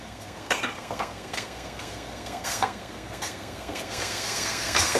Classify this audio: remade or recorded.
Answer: remade